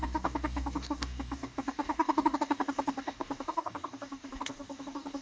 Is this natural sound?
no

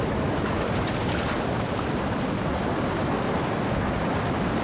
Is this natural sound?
yes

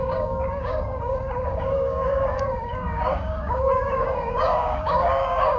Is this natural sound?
no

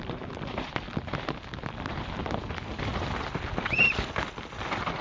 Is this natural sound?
yes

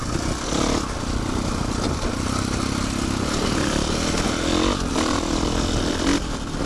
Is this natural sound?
yes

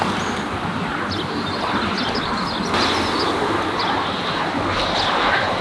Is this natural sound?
yes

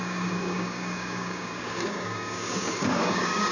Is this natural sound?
no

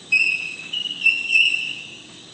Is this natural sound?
no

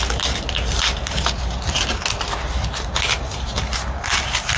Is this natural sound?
yes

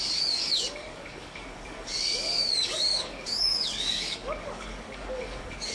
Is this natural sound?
no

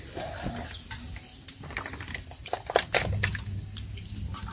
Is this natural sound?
yes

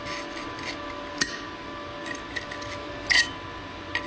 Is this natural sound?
yes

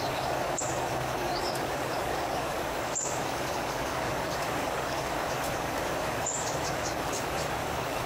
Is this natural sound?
no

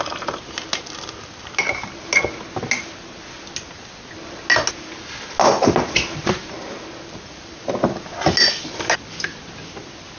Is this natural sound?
yes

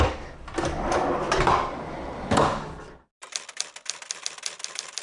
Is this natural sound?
yes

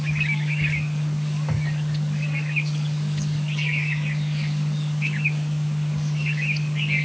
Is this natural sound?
no